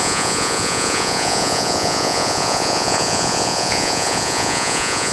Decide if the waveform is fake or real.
fake